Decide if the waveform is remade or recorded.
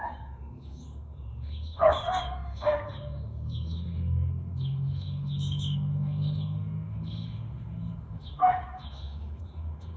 remade